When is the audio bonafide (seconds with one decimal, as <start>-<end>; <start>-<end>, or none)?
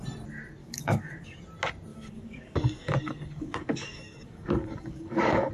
0.0-0.6; 1.4-1.9